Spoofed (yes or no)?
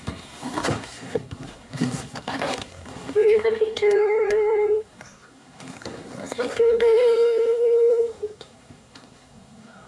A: yes